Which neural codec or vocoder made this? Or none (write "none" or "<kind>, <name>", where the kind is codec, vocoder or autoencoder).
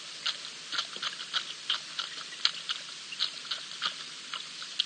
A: none